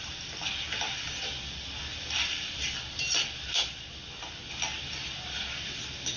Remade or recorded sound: recorded